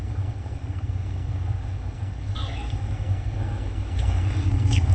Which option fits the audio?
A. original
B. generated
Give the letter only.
B